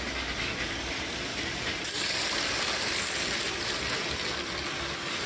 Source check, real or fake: real